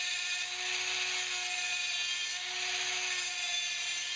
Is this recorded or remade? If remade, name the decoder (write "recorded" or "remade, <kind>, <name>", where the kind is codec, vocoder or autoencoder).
recorded